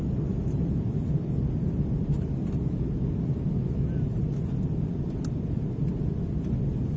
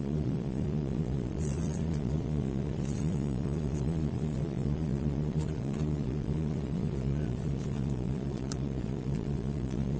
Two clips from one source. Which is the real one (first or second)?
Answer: first